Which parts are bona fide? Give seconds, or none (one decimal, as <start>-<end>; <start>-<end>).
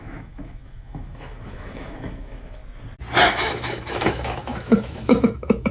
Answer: 2.6-3.2